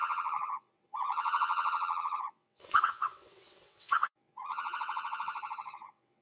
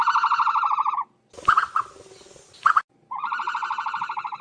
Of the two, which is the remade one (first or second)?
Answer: first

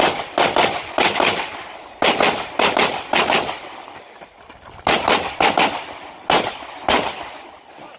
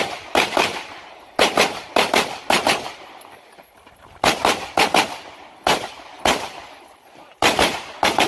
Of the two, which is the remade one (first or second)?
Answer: second